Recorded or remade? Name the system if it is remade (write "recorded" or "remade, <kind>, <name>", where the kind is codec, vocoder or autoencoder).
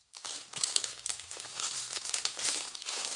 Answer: remade, codec, SNAC